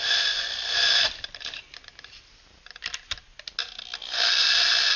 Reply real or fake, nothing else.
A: real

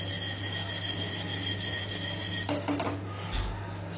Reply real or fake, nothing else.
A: real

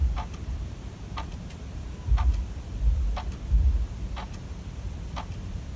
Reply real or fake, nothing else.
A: real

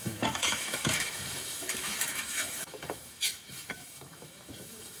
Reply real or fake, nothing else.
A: fake